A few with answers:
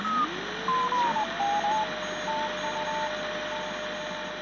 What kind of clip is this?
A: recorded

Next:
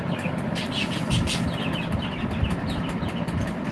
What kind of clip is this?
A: recorded